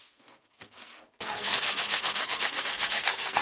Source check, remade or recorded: remade